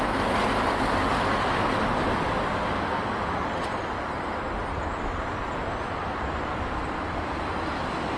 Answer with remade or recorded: recorded